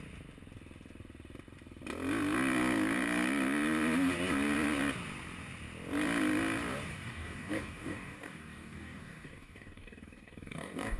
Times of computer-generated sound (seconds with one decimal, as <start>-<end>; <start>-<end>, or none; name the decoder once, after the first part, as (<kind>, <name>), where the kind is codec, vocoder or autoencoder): 6.9-11.0 (codec, DAC)